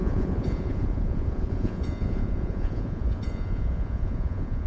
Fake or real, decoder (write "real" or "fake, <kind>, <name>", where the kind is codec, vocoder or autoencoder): fake, vocoder, Vocos